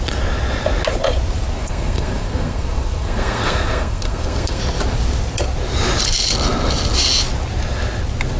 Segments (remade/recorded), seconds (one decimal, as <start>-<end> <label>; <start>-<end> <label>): 0.0-1.6 recorded; 1.6-4.6 remade; 4.6-8.4 recorded